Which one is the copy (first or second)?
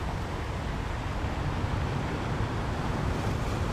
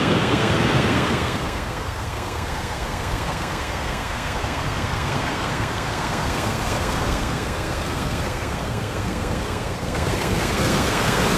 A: second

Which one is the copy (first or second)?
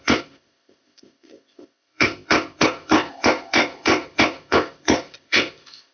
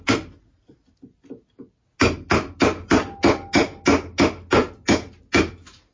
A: first